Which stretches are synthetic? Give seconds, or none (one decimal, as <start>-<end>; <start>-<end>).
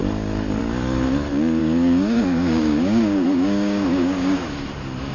1.6-4.5